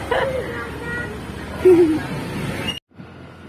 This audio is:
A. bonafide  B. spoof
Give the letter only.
A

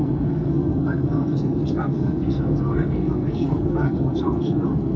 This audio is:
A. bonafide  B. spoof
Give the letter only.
B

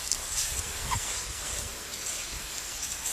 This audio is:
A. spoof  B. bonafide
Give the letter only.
A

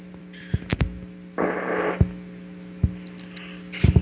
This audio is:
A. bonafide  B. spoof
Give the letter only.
A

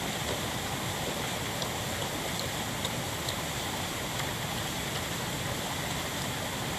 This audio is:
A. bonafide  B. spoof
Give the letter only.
A